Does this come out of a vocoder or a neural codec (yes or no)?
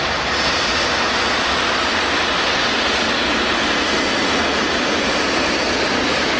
no